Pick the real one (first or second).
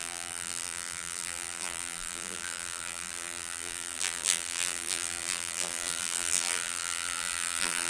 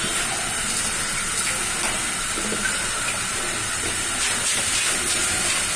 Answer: second